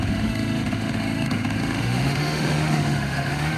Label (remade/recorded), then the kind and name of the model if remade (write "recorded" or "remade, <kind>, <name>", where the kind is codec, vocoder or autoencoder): remade, autoencoder, DAC-VAE